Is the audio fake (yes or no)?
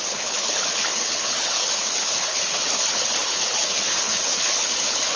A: yes